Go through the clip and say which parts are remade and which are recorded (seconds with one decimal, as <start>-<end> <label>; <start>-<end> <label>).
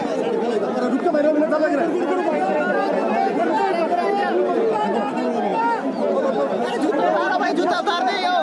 0.0-8.4 recorded